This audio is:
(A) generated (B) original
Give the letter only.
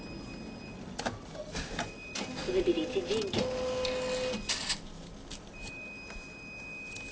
B